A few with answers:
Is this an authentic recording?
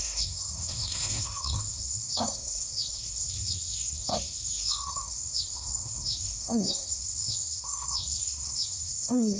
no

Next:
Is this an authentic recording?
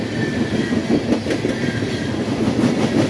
yes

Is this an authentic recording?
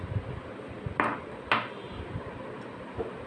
yes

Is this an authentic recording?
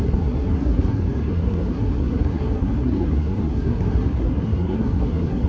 no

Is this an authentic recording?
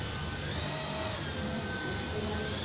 yes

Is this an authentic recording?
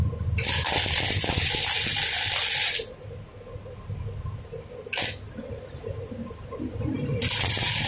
yes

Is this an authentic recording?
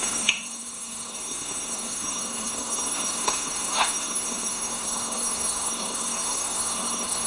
no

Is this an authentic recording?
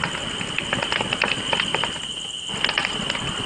yes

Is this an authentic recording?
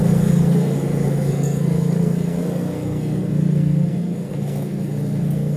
no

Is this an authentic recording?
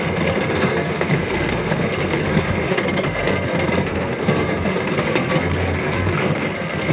no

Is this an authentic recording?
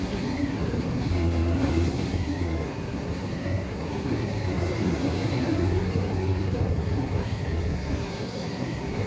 no